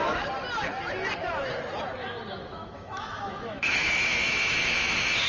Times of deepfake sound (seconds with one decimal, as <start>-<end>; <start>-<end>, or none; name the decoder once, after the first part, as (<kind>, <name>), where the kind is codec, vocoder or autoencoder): 2.0-5.3 (autoencoder, DAC-VAE)